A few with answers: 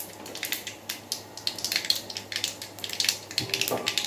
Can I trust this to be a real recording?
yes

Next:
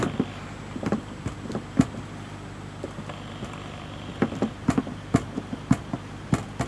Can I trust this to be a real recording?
yes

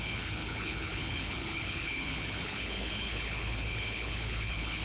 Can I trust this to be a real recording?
no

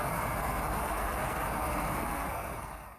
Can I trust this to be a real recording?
no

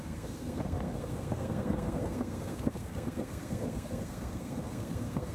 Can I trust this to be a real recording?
no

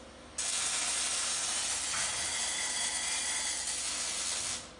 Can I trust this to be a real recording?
yes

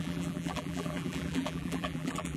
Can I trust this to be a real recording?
no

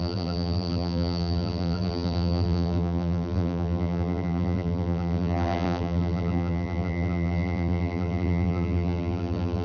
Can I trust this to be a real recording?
no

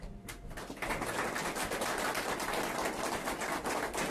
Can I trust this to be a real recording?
yes